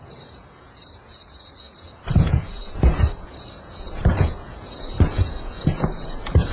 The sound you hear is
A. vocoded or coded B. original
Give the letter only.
A